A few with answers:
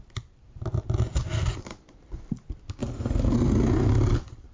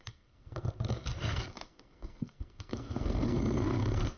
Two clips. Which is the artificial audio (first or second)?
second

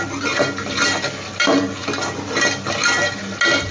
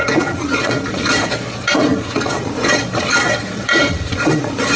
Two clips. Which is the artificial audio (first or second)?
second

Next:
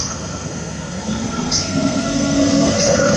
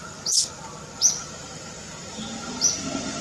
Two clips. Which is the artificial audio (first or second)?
first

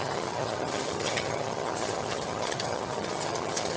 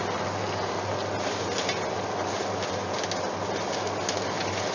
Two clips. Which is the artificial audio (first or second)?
first